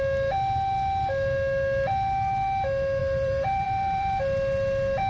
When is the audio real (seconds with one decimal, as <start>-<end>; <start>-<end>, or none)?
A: 0.0-3.0; 4.2-5.1